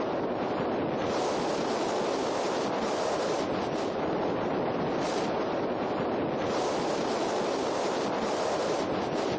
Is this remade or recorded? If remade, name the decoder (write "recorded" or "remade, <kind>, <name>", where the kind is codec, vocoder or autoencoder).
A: recorded